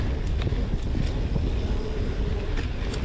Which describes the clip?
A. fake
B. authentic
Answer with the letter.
B